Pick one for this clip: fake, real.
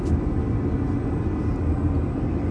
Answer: real